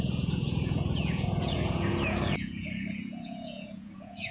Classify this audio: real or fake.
fake